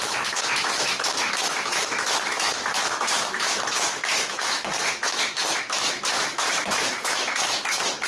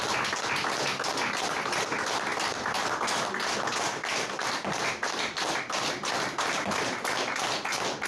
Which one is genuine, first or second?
second